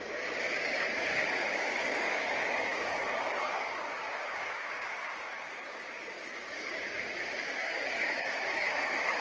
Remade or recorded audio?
remade